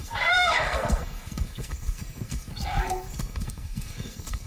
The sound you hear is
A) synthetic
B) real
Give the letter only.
A